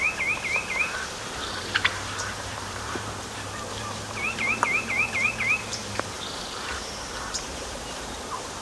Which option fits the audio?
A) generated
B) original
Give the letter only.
A